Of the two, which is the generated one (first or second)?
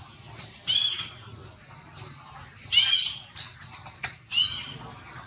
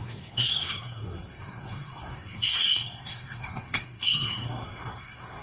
second